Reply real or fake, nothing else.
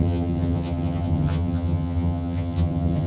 fake